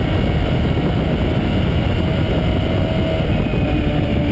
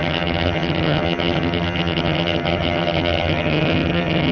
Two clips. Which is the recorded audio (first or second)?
first